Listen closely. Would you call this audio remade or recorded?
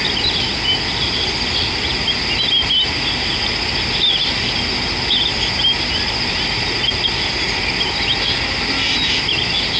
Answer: recorded